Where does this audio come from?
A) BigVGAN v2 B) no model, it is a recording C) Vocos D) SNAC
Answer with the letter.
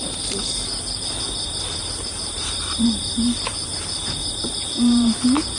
A